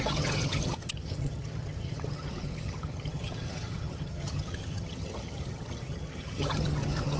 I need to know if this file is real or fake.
fake